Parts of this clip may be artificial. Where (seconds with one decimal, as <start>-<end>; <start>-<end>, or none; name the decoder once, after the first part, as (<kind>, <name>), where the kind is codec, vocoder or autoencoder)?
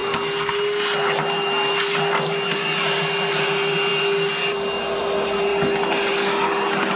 none